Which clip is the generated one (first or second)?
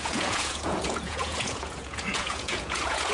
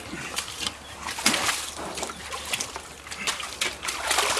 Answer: first